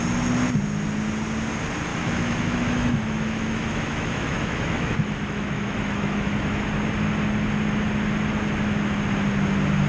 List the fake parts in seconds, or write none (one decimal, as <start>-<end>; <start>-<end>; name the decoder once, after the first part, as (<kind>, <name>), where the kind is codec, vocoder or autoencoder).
1.9-6.6 (autoencoder, DAC-VAE)